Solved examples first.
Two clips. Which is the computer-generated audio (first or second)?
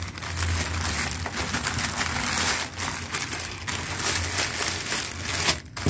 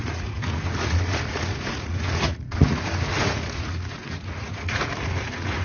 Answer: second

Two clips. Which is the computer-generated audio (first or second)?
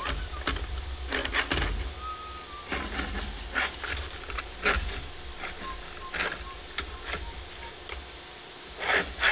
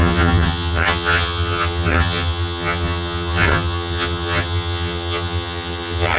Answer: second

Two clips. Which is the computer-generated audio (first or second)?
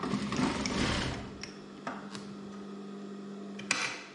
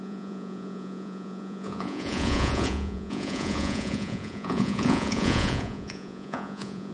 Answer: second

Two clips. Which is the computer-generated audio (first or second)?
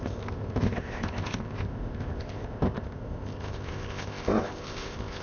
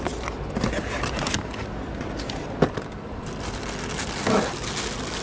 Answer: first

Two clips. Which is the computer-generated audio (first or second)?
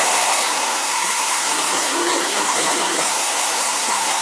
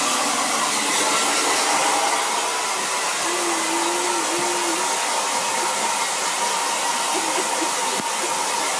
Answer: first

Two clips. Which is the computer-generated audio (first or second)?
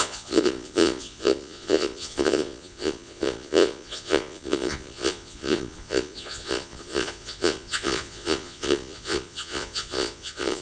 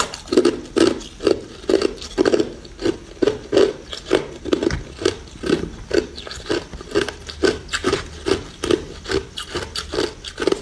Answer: first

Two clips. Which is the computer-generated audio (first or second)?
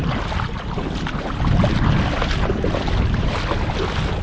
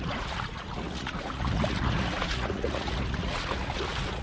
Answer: second